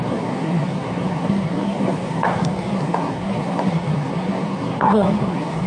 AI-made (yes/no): yes